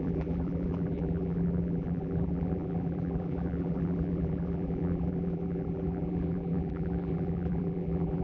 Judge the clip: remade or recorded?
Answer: remade